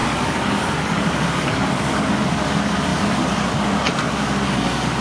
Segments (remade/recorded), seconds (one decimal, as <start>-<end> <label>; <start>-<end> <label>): 0.0-5.0 remade